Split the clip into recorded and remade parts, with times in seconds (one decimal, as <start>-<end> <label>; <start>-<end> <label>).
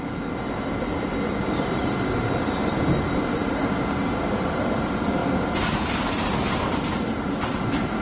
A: 0.0-8.0 recorded